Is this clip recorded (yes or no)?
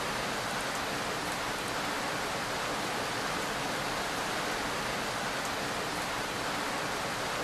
yes